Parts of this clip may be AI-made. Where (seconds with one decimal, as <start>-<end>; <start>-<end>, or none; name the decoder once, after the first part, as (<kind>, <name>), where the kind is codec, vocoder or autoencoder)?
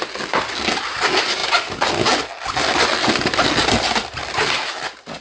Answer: none